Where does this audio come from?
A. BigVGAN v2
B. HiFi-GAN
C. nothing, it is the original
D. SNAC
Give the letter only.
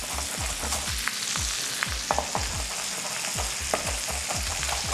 C